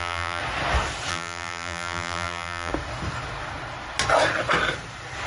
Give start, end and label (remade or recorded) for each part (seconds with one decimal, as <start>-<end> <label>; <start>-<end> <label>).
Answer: 0.0-0.4 remade; 0.4-1.1 recorded; 1.1-2.7 remade; 2.7-5.3 recorded